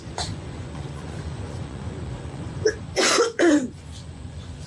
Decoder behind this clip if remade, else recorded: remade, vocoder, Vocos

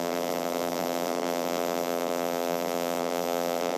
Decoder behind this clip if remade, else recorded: remade, vocoder, BigVGAN v2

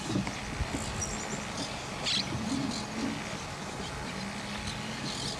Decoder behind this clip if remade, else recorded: recorded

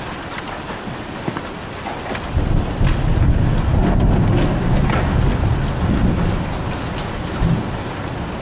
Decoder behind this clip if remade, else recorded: recorded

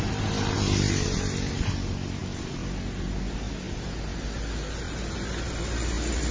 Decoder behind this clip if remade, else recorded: recorded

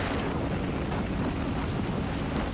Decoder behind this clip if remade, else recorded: recorded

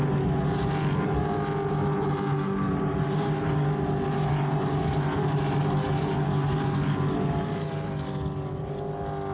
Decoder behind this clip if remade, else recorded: recorded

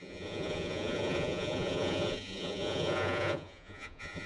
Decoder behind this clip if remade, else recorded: remade, vocoder, Vocos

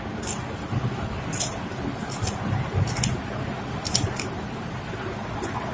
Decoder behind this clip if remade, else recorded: recorded